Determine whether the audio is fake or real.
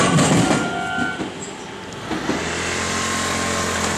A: real